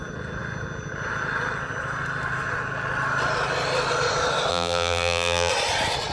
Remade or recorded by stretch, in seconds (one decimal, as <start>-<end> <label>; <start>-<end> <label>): 0.0-4.5 recorded; 4.5-5.5 remade; 5.5-6.1 recorded